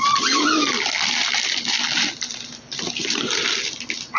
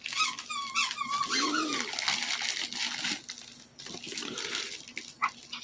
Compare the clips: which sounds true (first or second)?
second